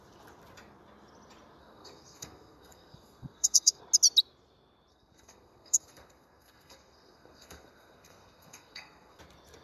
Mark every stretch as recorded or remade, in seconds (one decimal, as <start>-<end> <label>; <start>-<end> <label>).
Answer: 0.0-1.6 recorded; 1.6-3.8 remade; 3.8-4.9 recorded; 4.9-9.2 remade; 9.2-9.6 recorded